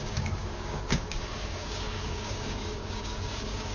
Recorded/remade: remade